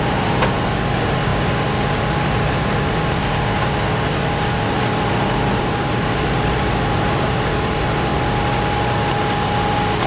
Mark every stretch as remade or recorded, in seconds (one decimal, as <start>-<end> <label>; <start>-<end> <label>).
0.0-1.3 remade; 1.3-5.1 recorded; 5.1-8.1 remade; 8.1-10.1 recorded

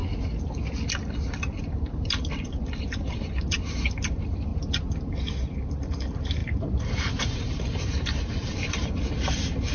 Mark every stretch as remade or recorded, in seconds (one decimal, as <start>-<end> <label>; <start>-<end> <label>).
0.0-1.7 recorded; 1.7-4.5 remade; 4.5-5.7 recorded; 5.7-9.7 remade

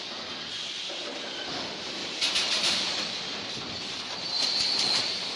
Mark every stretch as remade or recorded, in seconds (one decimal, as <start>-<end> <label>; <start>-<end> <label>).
0.0-2.0 recorded; 2.0-5.4 remade

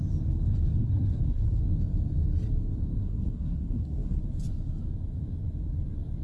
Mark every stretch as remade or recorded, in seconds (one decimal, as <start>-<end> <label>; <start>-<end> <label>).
0.0-0.8 recorded; 0.8-1.6 remade; 1.6-3.0 recorded; 3.0-4.2 remade; 4.2-6.2 recorded